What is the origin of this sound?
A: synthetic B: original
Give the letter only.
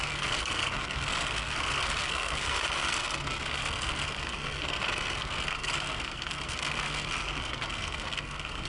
A